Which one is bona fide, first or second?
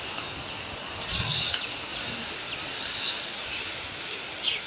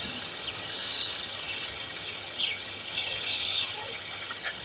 first